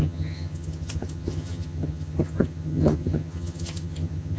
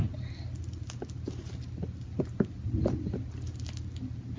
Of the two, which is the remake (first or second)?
first